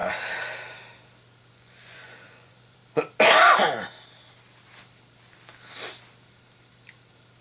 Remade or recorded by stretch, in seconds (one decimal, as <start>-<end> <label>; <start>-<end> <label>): 0.0-1.5 recorded; 1.5-2.8 remade; 2.8-7.4 recorded